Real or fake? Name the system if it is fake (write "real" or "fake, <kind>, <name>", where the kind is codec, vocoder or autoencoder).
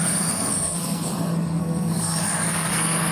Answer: fake, codec, SNAC